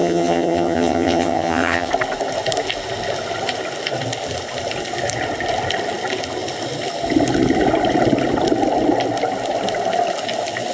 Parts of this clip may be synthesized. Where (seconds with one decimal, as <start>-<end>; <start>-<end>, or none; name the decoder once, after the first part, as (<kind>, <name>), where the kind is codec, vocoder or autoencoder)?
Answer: 0.0-1.9 (vocoder, HiFi-GAN)